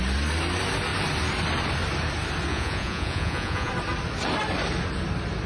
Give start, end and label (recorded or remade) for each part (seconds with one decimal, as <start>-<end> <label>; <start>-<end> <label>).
0.0-2.5 recorded; 2.5-3.7 remade; 3.7-5.5 recorded